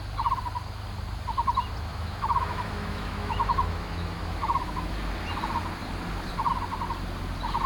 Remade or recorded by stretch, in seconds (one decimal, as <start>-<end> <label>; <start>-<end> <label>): 0.0-1.9 recorded; 1.9-4.9 remade; 4.9-7.7 recorded